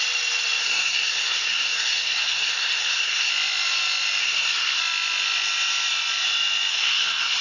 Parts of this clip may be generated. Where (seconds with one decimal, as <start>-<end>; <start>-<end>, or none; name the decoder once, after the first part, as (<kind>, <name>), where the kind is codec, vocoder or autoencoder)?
0.6-3.3 (codec, SNAC); 4.2-4.8; 6.7-7.4